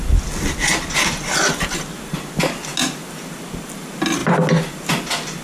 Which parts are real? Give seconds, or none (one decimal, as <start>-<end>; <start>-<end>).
0.0-5.4